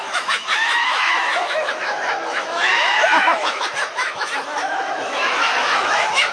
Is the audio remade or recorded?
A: remade